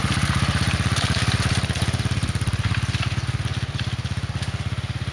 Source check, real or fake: real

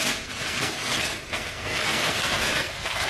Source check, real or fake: fake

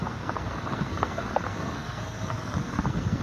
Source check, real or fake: fake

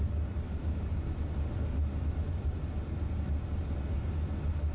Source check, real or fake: real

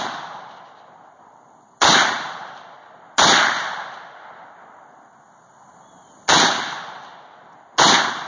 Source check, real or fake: real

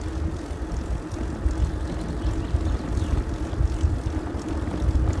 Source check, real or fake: real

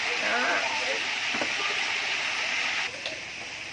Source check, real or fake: real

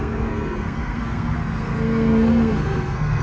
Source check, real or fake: fake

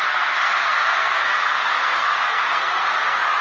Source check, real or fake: fake